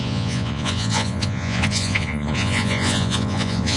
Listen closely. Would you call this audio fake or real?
fake